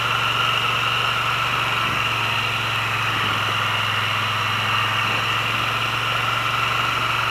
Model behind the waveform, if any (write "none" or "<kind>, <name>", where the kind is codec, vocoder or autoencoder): none